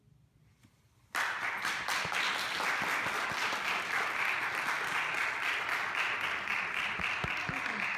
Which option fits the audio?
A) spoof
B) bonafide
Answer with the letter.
B